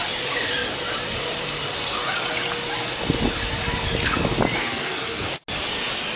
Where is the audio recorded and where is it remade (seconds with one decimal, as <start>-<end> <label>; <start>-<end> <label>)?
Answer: 0.0-4.6 recorded; 4.6-5.4 remade; 5.4-6.2 recorded